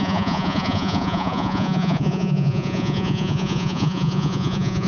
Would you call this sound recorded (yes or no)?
no